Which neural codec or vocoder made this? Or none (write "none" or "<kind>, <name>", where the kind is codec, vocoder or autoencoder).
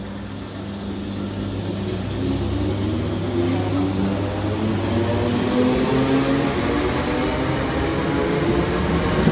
none